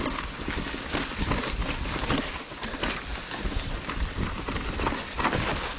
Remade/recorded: recorded